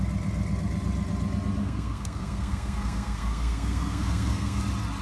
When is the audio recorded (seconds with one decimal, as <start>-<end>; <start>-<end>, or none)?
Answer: 0.0-1.6; 4.6-5.0